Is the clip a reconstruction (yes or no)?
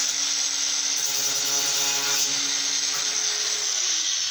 no